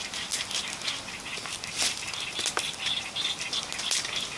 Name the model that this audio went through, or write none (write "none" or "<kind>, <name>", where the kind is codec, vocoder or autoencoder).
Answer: none